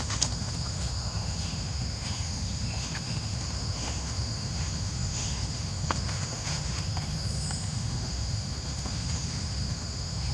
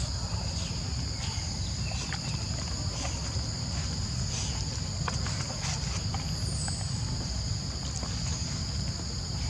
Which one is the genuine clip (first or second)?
second